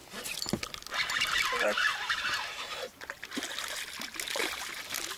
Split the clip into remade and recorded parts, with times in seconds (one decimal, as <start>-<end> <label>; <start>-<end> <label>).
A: 0.0-5.2 recorded